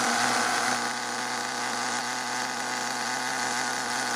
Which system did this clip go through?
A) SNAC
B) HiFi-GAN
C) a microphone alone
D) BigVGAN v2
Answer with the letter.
C